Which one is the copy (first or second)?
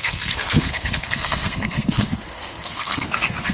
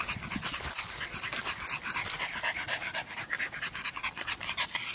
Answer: first